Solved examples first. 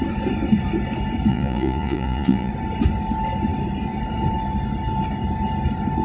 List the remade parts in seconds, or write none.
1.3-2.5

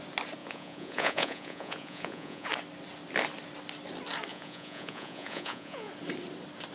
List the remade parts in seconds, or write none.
0.4-2.5; 4.3-5.9

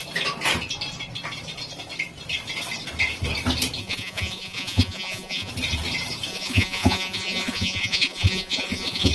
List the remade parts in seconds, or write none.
3.8-5.5; 6.3-9.1

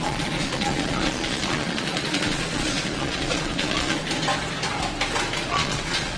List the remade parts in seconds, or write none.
0.0-4.0; 5.5-6.2

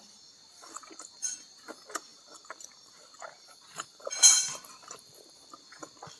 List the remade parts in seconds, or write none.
none

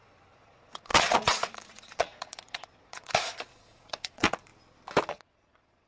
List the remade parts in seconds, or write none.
0.0-4.5; 5.1-5.9

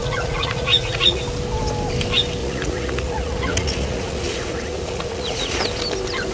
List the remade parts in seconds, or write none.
0.0-1.2; 2.4-5.6